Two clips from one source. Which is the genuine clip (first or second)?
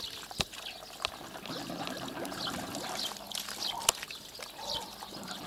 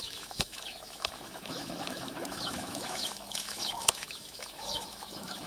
first